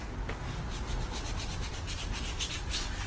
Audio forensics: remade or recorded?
recorded